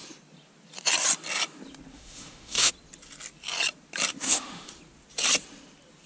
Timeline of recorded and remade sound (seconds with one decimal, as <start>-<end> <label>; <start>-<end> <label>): 0.0-1.9 recorded; 1.9-2.7 remade; 2.7-4.1 recorded; 4.1-4.7 remade; 4.7-6.1 recorded